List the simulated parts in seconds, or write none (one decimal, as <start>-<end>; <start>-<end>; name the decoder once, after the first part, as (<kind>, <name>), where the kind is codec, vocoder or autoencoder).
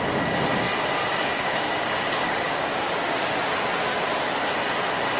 1.0-2.7 (codec, DAC)